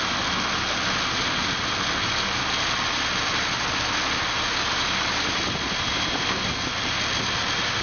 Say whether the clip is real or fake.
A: real